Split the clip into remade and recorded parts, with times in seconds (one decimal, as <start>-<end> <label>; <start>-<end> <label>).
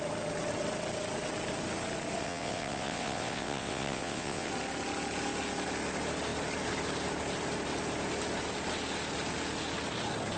0.0-2.2 recorded; 2.2-4.5 remade; 4.5-10.4 recorded